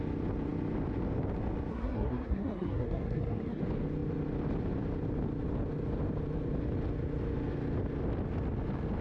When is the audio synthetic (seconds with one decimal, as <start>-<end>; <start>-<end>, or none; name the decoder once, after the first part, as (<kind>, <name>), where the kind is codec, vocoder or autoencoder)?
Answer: 1.7-3.6 (codec, SNAC)